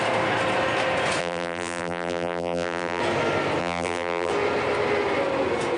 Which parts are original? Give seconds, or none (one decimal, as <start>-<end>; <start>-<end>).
0.0-1.2; 3.0-3.6; 4.3-5.8